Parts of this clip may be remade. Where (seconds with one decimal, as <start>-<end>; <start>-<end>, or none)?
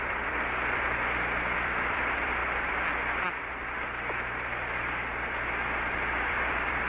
0.0-2.4; 3.4-6.9